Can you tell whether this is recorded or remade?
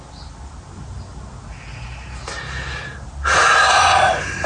recorded